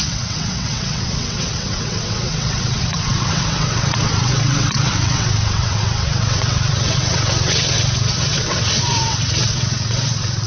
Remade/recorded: remade